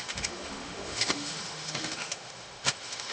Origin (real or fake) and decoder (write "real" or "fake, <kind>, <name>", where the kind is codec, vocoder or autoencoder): fake, autoencoder, DAC-VAE